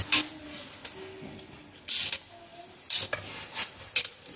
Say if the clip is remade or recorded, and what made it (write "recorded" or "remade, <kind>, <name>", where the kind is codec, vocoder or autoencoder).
recorded